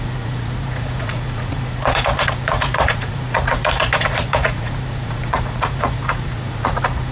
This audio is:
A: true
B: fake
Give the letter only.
B